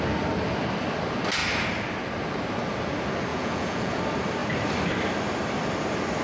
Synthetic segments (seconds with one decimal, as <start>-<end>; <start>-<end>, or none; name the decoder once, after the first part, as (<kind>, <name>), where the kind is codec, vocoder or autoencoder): 3.3-4.0 (vocoder, Vocos)